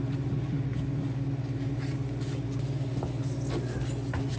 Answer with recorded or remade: recorded